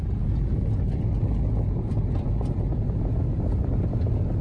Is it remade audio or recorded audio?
recorded